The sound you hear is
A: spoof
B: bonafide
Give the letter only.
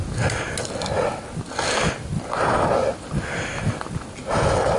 B